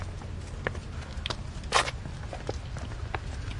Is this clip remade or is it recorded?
recorded